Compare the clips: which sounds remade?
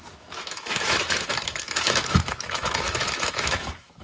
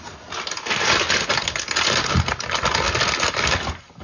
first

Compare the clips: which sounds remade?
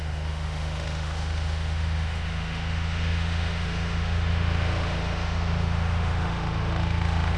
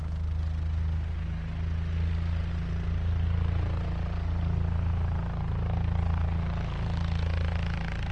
first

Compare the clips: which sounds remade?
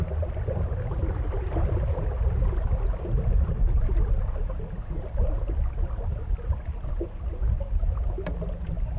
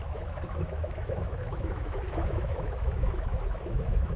second